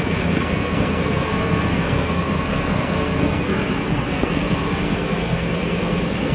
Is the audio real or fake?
fake